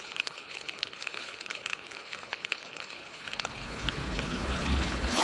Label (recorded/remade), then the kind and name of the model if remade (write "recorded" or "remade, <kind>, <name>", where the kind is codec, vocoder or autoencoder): remade, codec, HILCodec